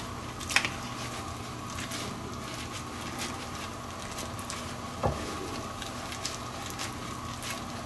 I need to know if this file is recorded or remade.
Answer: recorded